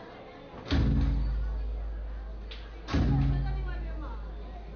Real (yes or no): yes